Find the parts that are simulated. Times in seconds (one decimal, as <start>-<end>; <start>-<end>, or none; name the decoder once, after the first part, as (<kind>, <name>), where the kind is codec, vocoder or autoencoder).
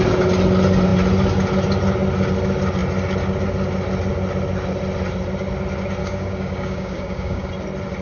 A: 6.0-7.5 (codec, DAC)